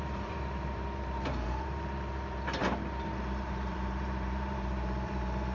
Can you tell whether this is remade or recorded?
remade